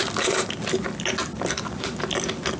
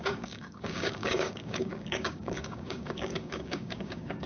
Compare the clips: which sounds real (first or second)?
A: first